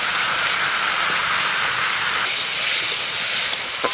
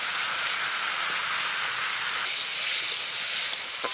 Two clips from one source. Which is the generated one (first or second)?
first